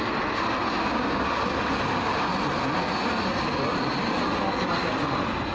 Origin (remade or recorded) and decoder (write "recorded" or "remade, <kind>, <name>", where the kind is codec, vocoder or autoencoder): recorded